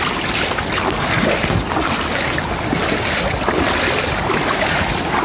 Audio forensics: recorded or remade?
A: recorded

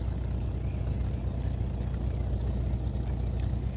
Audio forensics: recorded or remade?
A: recorded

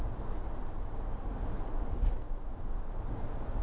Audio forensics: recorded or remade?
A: recorded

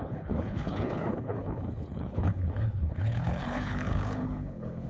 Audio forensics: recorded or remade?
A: remade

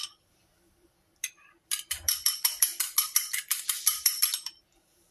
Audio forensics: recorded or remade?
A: remade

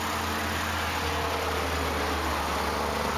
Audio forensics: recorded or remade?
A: recorded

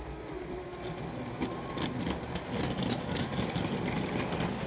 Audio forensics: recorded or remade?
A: recorded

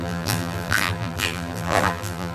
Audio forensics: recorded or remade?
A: remade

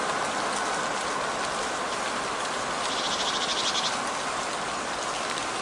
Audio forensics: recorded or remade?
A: recorded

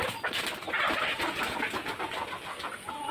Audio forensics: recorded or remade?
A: recorded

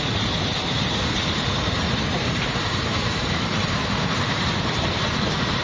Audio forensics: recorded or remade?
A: remade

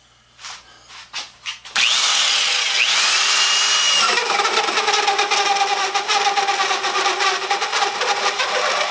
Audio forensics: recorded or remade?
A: recorded